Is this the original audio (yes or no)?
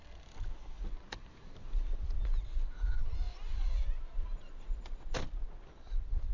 yes